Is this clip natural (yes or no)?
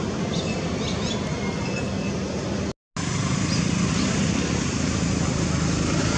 yes